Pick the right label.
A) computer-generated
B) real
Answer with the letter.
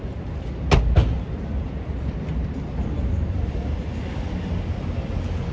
B